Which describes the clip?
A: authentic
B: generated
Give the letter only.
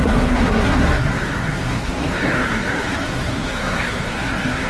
B